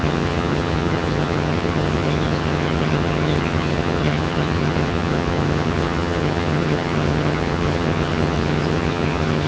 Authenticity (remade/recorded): remade